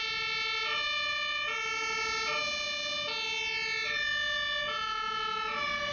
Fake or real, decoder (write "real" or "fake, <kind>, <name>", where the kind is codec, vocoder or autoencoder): real